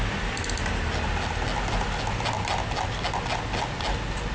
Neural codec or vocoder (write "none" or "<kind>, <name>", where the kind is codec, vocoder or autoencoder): none